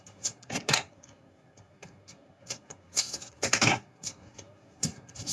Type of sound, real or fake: fake